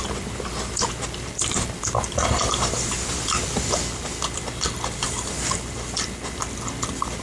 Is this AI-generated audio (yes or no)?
yes